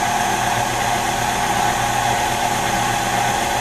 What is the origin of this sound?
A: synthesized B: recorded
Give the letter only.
B